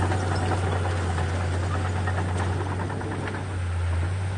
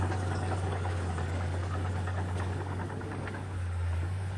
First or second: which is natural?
first